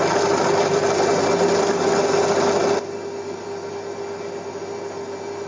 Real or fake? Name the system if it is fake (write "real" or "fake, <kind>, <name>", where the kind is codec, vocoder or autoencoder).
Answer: real